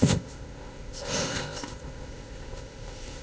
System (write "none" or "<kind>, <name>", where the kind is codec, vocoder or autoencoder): codec, ZipCodec